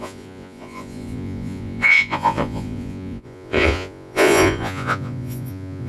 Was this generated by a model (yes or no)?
yes